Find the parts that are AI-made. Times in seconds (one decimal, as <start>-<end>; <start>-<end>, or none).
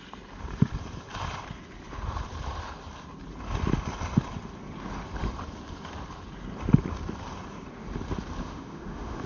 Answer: 8.4-9.3